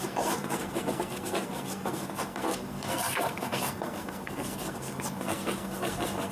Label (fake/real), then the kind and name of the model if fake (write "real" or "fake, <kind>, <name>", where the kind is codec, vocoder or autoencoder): fake, codec, SNAC